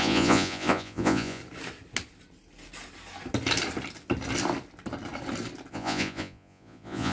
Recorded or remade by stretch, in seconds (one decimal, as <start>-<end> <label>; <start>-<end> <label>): 0.0-1.4 remade; 1.4-5.7 recorded; 5.7-7.1 remade